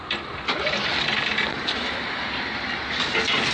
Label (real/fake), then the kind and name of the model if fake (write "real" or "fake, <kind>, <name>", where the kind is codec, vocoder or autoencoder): fake, vocoder, BigVGAN v2